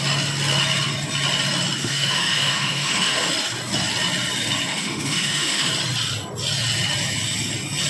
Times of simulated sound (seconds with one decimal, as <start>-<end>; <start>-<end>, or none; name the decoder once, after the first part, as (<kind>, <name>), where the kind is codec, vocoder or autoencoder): 1.8-3.3 (autoencoder, DAC-VAE); 4.7-5.7